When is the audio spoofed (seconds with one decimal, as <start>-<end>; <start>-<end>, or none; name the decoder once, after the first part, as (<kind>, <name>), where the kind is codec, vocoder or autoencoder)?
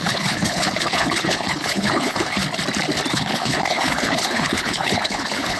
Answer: 0.0-2.4 (codec, HILCodec); 3.1-5.6